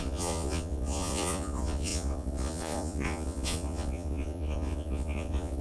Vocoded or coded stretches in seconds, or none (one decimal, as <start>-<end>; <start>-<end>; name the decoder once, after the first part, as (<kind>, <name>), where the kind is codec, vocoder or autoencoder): 0.0-5.6 (vocoder, Vocos)